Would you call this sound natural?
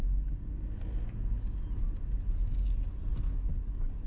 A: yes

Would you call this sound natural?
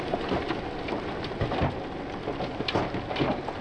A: yes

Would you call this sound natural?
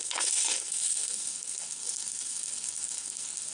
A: no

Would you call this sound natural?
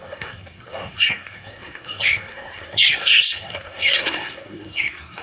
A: no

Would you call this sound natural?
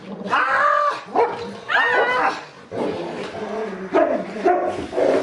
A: yes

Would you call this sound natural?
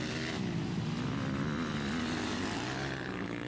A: yes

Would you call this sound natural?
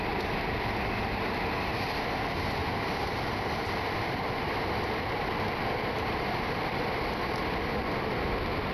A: yes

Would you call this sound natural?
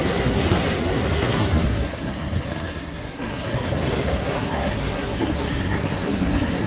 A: no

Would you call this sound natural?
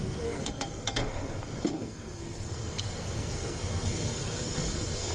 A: no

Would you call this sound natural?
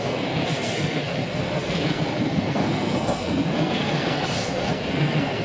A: no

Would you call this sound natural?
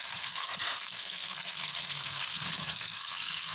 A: no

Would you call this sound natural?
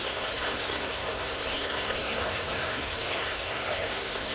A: no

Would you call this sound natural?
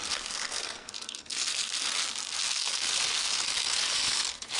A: no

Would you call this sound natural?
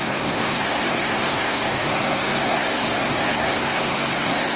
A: no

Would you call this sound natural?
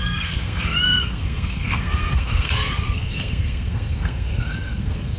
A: no